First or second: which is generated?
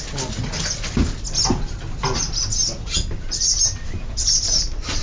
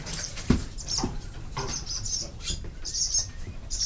second